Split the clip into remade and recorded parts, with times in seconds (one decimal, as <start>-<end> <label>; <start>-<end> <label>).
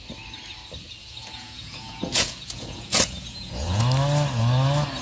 0.0-1.0 recorded; 1.0-3.8 remade; 3.8-5.0 recorded